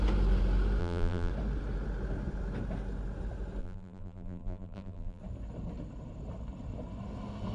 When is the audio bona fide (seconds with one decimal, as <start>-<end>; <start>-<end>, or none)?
0.0-0.8; 1.3-3.6; 5.2-7.5